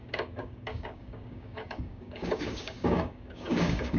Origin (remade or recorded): remade